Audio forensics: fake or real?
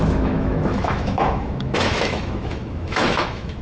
fake